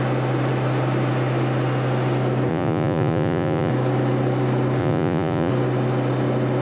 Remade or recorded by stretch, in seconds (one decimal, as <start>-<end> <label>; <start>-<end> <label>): 0.0-2.5 recorded; 2.5-3.7 remade; 3.7-4.8 recorded; 4.8-5.5 remade; 5.5-6.6 recorded